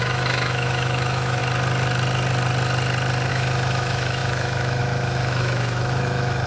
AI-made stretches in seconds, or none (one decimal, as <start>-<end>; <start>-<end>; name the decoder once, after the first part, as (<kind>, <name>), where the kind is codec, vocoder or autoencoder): 0.0-1.4 (autoencoder, DAC-VAE); 3.3-6.5